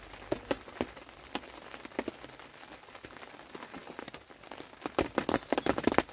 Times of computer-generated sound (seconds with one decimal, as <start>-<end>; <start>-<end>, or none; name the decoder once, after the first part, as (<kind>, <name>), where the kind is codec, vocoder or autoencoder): none

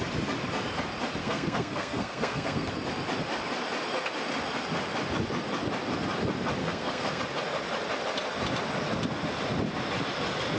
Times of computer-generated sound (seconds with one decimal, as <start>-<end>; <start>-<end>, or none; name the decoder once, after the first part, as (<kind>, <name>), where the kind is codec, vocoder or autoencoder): 1.2-2.7 (codec, SNAC); 6.6-7.2

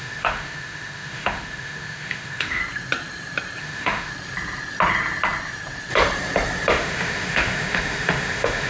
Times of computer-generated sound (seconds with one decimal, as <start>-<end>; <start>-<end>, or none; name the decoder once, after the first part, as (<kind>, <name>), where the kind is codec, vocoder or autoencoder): 0.0-2.6 (autoencoder, DAC-VAE); 3.6-4.1; 6.7-8.7

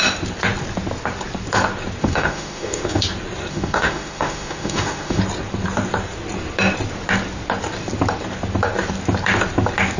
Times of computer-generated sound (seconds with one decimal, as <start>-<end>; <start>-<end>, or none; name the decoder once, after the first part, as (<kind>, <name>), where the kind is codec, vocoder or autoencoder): 2.0-3.0 (autoencoder, DAC-VAE); 3.5-5.2

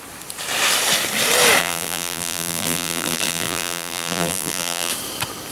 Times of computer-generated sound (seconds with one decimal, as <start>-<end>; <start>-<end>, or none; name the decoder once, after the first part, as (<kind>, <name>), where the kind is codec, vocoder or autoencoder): 1.6-4.9 (vocoder, BigVGAN v2)

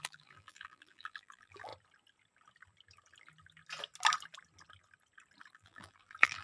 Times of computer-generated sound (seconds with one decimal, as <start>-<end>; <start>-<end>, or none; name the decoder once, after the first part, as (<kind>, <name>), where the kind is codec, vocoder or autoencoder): 0.0-1.7 (vocoder, BigVGAN v2); 5.5-6.4

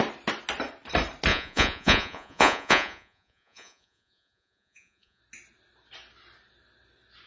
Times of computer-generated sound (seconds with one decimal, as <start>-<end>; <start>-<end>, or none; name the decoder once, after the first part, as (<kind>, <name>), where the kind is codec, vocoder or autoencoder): 1.3-5.2 (vocoder, Vocos)

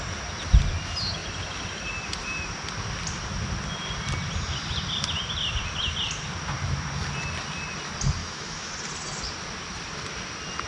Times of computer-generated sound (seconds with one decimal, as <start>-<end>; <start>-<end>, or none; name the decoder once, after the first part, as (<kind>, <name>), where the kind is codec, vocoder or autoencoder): 8.2-8.7 (autoencoder, DAC-VAE)